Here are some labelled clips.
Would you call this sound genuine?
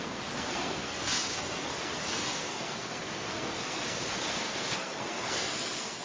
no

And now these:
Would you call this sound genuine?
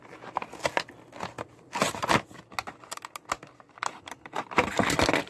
yes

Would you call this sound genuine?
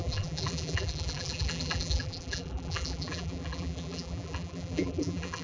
no